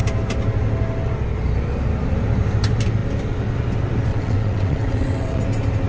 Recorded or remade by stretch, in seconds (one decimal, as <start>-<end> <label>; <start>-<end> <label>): 0.0-4.1 recorded; 4.1-5.4 remade; 5.4-5.9 recorded